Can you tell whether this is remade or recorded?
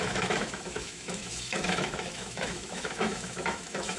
remade